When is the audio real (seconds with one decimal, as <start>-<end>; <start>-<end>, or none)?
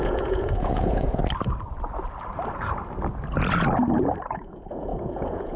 1.2-4.3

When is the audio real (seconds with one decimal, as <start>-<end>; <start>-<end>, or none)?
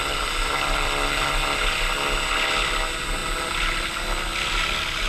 1.4-5.1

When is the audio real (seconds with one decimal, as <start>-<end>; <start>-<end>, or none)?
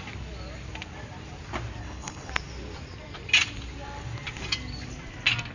0.0-1.8; 2.3-5.5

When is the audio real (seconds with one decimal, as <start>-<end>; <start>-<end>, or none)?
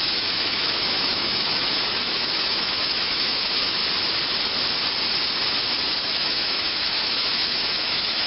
3.8-5.8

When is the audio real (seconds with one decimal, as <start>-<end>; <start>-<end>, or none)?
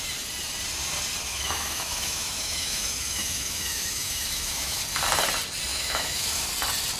0.0-1.3; 4.8-5.7; 6.5-7.0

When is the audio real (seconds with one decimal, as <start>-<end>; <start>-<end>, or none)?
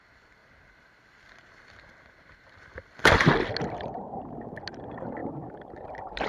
0.0-5.2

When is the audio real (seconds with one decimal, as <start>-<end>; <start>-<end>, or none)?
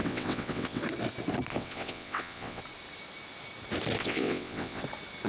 0.8-1.5; 2.6-4.0; 4.8-5.3